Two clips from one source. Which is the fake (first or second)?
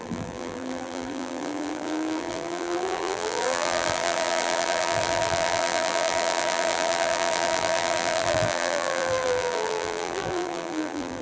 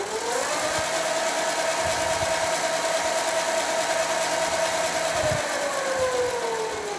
first